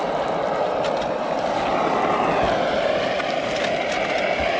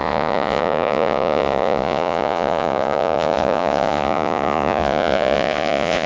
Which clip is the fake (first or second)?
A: second